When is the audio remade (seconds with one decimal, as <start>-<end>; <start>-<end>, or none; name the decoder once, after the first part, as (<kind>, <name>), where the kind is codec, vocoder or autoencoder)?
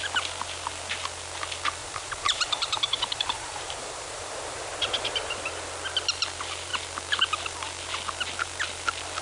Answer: 1.8-5.5 (vocoder, BigVGAN v2)